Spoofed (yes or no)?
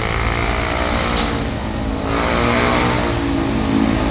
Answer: no